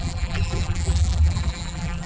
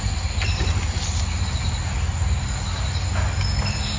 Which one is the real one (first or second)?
second